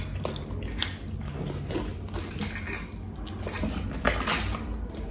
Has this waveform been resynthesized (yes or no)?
no